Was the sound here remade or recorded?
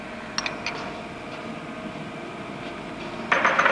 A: recorded